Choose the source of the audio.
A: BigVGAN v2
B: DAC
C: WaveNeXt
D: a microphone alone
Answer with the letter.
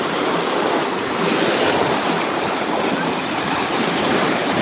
D